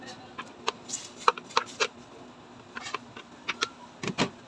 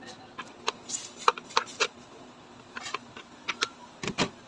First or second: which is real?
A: first